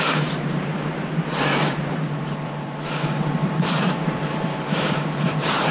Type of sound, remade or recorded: remade